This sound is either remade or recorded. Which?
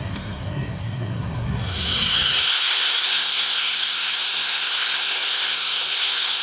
remade